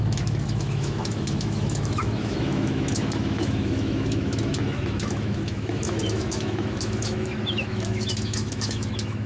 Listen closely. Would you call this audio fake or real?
fake